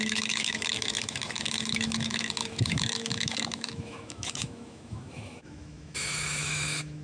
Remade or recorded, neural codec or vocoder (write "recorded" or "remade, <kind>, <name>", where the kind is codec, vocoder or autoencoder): remade, autoencoder, DAC-VAE